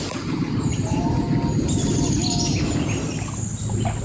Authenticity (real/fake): real